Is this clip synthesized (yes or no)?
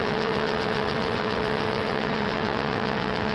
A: yes